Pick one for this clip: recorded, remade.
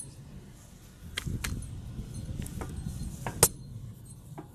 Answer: recorded